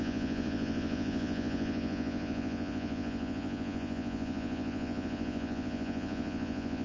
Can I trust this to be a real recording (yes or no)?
no